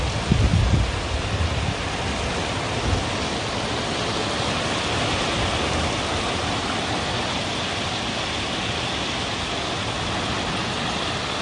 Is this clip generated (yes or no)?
no